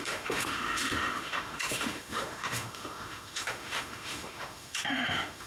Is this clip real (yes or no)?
no